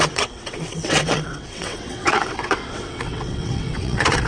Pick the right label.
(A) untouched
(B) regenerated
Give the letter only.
B